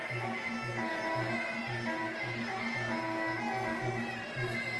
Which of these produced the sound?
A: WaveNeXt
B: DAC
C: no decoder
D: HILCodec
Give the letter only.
C